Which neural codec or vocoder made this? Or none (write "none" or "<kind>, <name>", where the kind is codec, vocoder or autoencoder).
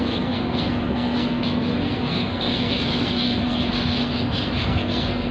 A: codec, SNAC